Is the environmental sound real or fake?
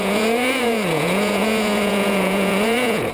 fake